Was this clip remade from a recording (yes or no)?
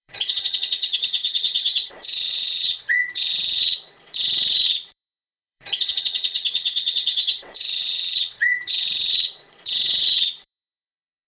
yes